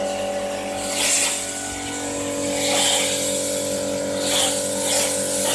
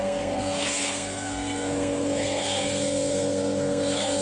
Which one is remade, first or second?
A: second